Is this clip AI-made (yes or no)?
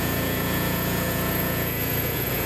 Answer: yes